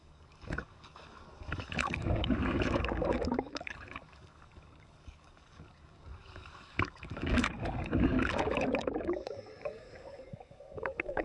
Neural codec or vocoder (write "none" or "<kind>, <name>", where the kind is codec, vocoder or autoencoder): codec, DAC